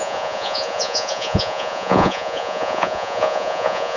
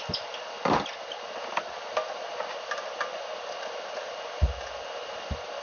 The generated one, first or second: first